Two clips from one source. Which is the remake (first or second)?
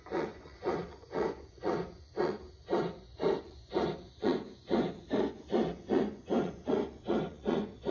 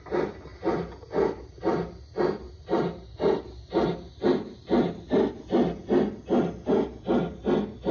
first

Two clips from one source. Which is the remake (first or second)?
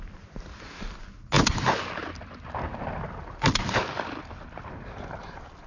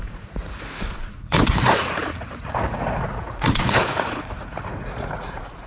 second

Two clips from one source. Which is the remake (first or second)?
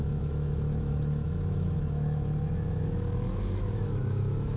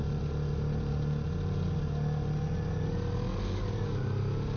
first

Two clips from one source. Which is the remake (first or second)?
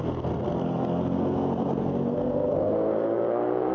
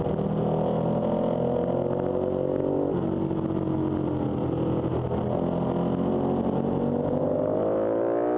first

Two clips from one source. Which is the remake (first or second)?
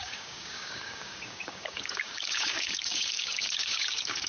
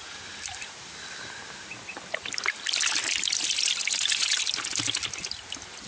first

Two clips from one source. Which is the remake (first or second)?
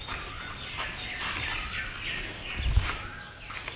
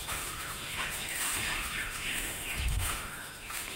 second